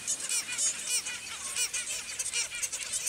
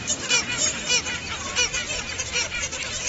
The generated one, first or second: second